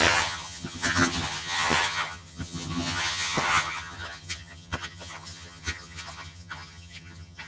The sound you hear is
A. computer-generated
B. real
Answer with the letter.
A